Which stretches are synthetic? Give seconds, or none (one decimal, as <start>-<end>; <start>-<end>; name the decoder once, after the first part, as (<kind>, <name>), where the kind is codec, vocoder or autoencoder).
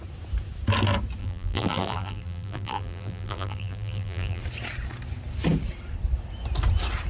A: 1.2-4.4 (vocoder, BigVGAN v2)